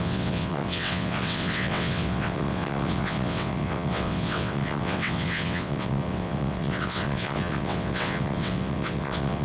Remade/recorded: remade